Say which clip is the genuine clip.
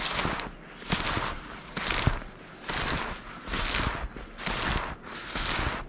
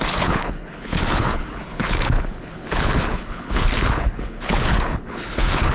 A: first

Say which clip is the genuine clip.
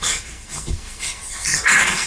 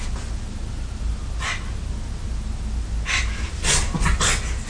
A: second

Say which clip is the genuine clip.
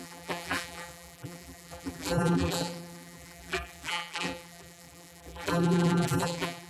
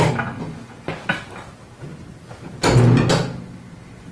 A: second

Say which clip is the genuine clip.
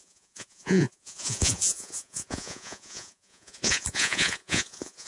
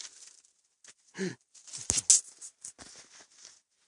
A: second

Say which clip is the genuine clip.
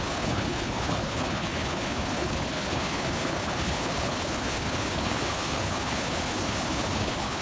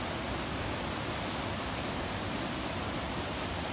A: second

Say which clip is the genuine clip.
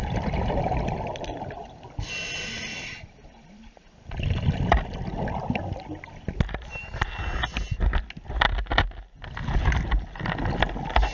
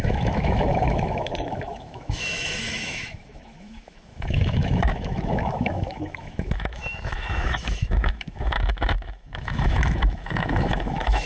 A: first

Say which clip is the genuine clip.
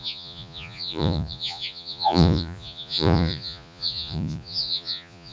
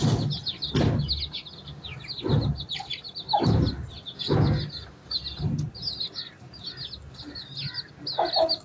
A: second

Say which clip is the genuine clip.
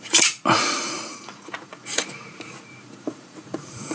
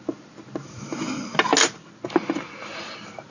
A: second